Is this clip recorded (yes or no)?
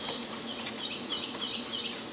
no